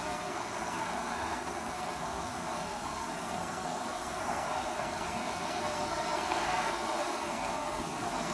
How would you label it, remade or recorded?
remade